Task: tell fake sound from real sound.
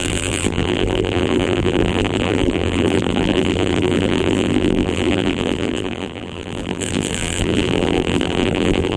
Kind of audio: fake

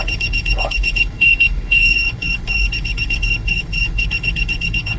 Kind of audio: fake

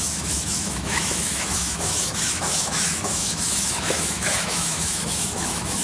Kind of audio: fake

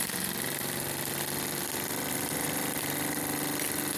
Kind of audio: fake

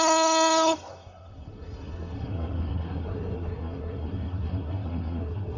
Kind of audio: fake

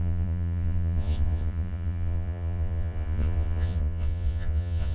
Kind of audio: fake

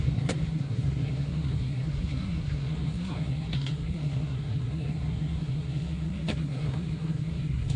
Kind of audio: fake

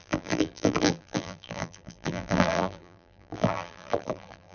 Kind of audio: fake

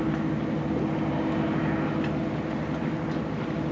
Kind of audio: real